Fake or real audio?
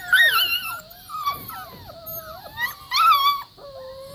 real